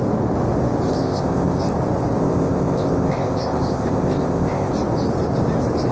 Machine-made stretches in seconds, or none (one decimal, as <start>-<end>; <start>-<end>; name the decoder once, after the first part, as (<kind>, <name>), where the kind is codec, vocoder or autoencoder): 0.9-1.6 (codec, ZipCodec); 2.2-4.7